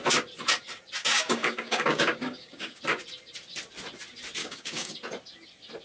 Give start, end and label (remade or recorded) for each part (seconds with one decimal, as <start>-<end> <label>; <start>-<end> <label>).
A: 0.0-1.0 recorded; 1.0-2.8 remade; 2.8-4.4 recorded; 4.4-5.0 remade; 5.0-5.8 recorded